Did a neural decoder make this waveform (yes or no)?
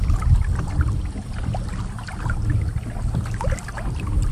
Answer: no